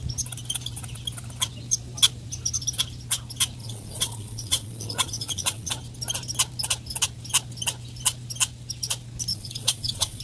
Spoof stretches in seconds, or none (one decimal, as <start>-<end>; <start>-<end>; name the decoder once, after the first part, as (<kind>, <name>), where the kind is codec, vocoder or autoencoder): 3.6-5.7 (vocoder, Vocos); 9.3-10.2